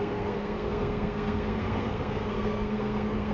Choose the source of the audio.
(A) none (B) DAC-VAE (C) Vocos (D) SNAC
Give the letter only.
D